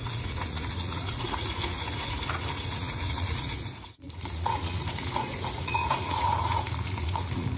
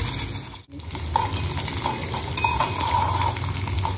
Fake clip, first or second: first